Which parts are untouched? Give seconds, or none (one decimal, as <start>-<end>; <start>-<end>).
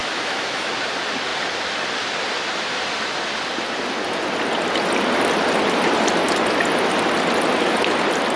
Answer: 0.7-8.4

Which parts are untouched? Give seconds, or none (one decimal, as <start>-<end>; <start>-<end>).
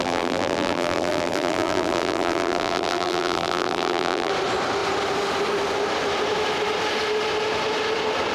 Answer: 4.3-8.3